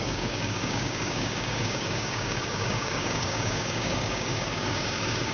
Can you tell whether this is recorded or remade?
remade